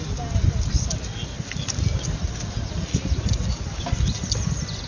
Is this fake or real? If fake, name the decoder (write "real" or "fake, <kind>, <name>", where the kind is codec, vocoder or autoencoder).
real